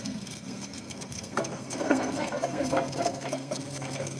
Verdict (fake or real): fake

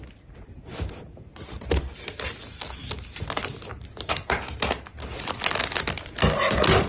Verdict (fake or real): real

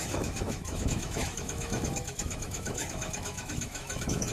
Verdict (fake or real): fake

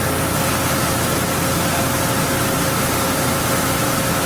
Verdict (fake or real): real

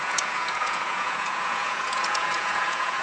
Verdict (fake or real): fake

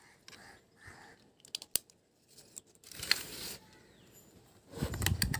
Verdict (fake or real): real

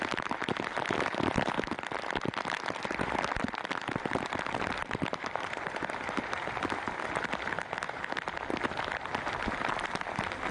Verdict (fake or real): fake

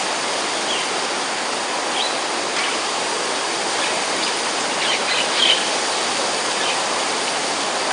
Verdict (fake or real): real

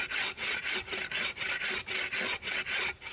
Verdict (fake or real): real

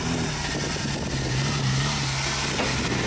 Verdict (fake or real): real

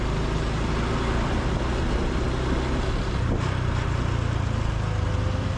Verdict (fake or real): real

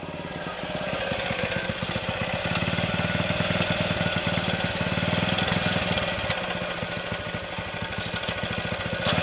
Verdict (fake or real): real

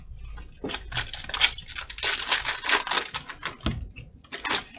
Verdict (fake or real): real